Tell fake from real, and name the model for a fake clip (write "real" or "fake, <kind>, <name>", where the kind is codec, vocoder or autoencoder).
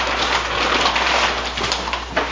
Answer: real